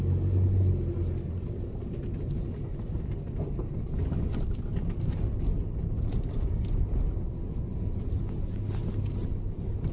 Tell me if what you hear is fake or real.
real